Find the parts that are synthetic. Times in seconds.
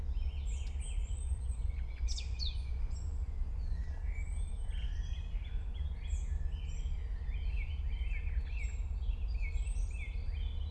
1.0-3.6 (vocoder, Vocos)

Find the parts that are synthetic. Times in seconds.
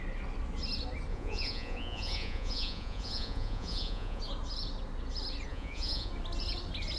1.1-4.2 (vocoder, Vocos); 5.5-6.1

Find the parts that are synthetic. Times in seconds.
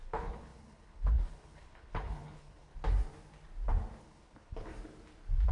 0.0-2.7 (codec, HILCodec); 4.0-4.7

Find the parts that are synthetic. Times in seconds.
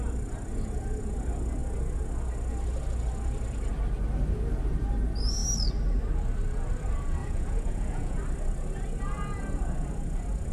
7.2-8.2 (vocoder, Vocos)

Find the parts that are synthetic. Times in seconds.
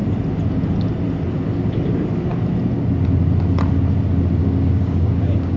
4.4-5.6 (codec, DAC)